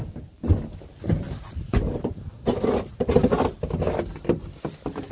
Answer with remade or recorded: recorded